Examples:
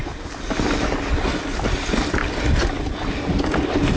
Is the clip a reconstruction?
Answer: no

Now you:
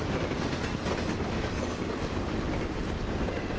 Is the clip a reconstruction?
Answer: no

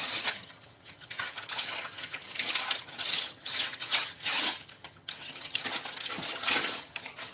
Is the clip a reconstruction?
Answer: yes